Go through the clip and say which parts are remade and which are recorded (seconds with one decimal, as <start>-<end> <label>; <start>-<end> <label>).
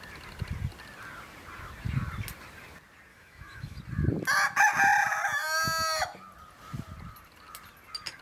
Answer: 0.0-3.1 recorded; 3.1-3.8 remade; 3.8-8.2 recorded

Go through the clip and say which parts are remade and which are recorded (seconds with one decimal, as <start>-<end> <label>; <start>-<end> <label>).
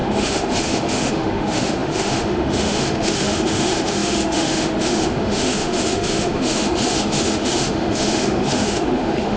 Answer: 0.0-9.4 remade